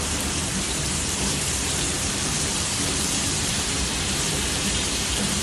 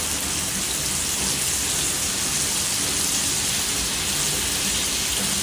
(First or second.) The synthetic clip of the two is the first